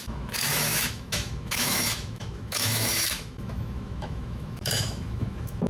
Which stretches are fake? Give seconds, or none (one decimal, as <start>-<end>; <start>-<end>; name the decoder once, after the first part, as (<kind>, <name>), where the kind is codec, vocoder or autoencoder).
0.0-5.7 (autoencoder, DAC-VAE)